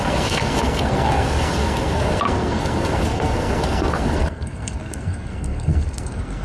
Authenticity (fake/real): fake